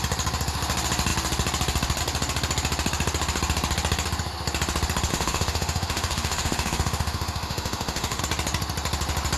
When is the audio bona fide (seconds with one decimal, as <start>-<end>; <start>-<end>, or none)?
0.0-5.1; 8.2-9.4